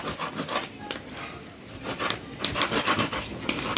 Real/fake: fake